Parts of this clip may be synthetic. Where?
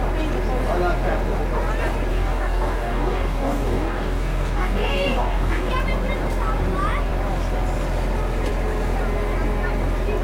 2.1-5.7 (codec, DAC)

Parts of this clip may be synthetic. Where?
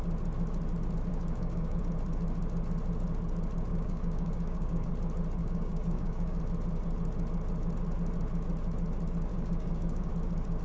1.1-1.8 (codec, DAC); 3.7-4.9; 5.4-6.4; 9.3-10.1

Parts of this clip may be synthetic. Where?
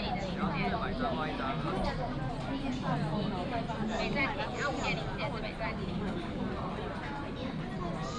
5.8-6.4 (codec, DAC)